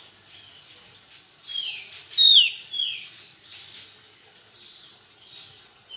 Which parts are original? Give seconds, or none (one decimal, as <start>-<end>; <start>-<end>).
0.0-6.0